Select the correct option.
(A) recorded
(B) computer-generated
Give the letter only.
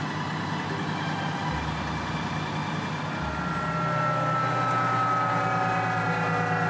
A